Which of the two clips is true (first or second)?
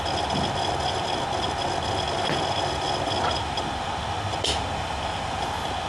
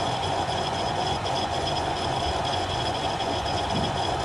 first